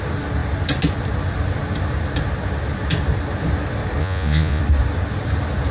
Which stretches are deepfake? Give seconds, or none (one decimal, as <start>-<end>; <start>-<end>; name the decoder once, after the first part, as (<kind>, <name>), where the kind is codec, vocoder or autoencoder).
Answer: 4.0-4.6 (vocoder, Vocos)

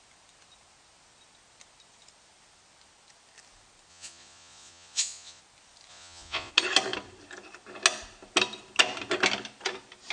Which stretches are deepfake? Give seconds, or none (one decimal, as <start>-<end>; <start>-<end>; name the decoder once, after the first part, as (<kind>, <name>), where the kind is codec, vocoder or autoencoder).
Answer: 3.9-5.4 (vocoder, Vocos); 5.9-6.5

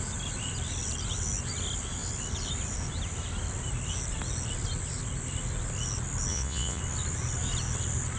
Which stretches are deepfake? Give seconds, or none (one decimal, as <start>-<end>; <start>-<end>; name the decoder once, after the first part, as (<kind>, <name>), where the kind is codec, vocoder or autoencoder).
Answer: 6.3-6.8 (vocoder, Vocos)

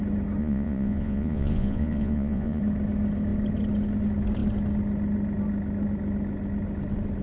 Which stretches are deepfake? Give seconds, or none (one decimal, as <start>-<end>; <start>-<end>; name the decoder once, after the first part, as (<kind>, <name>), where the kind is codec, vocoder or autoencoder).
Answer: 0.4-2.6 (vocoder, Vocos)

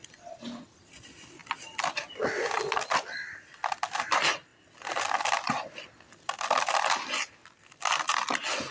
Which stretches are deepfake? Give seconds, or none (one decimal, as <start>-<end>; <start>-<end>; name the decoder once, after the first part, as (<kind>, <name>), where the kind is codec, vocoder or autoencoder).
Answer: none

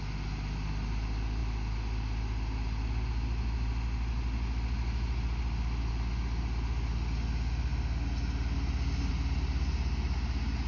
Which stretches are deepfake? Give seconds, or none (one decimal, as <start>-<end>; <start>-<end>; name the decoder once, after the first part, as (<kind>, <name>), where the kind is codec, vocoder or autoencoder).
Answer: none